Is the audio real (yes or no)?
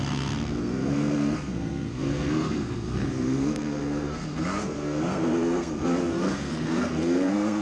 no